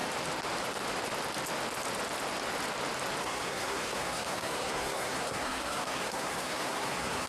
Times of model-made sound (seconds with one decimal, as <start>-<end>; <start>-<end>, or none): 3.2-7.3